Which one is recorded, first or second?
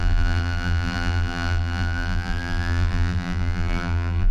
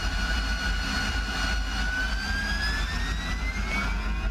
second